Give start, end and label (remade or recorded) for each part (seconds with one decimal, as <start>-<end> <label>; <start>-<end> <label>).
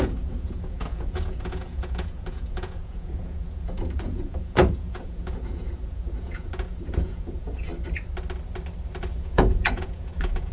0.0-7.7 remade; 7.7-9.2 recorded; 9.2-10.5 remade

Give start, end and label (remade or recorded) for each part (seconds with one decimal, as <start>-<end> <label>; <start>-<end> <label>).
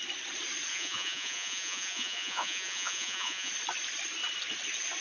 0.0-0.7 recorded; 0.7-3.5 remade; 3.5-5.0 recorded